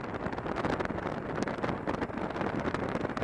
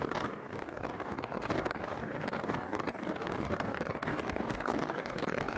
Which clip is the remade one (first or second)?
second